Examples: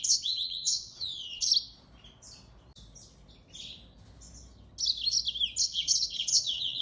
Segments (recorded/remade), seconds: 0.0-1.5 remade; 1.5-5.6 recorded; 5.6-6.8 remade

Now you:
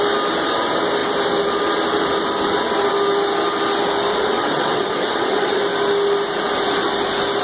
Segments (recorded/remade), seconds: 0.0-4.1 recorded; 4.1-5.6 remade; 5.6-7.4 recorded